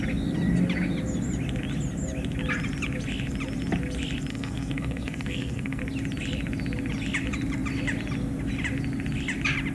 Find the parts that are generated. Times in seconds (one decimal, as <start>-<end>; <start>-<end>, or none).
4.3-5.8